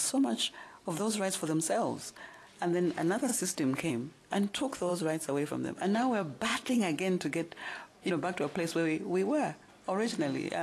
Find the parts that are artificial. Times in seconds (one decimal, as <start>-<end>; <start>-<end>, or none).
0.0-1.0; 3.3-3.9; 4.9-5.5; 6.5-8.1